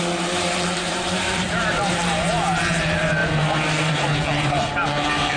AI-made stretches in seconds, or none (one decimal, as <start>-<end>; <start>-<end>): 0.0-3.2; 3.8-5.4